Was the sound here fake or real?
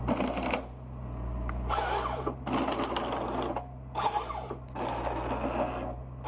real